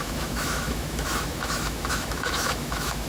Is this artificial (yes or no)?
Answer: yes